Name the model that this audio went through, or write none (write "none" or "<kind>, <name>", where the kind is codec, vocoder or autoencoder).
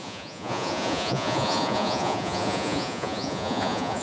vocoder, Vocos